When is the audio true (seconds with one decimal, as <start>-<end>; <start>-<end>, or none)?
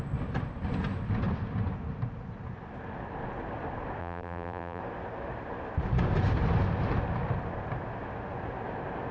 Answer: 0.0-4.0; 4.8-9.1